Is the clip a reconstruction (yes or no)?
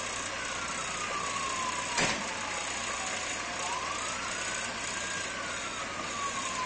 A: no